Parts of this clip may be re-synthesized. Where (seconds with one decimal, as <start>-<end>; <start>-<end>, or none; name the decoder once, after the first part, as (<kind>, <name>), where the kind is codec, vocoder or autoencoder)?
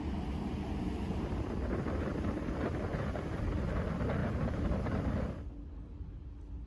2.9-3.4 (vocoder, BigVGAN v2); 4.2-5.1